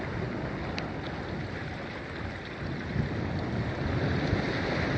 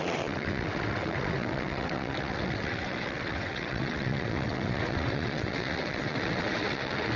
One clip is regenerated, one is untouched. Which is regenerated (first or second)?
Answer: second